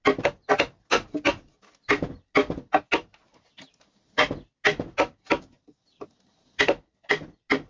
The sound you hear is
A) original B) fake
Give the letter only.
A